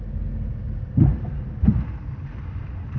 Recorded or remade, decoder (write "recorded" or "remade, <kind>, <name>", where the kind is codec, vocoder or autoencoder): recorded